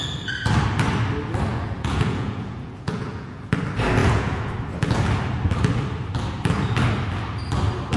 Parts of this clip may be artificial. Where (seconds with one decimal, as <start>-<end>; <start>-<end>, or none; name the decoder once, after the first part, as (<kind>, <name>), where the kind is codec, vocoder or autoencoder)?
1.5-3.5 (vocoder, Vocos); 4.0-4.5